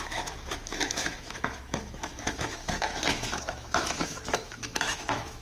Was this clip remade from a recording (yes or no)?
yes